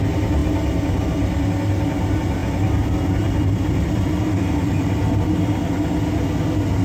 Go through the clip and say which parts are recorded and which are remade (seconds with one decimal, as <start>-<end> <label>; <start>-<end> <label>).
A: 0.0-2.4 recorded; 2.4-5.7 remade; 5.7-6.8 recorded